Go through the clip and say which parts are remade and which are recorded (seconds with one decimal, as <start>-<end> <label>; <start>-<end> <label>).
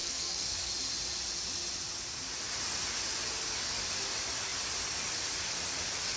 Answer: 0.0-0.7 remade; 0.7-6.2 recorded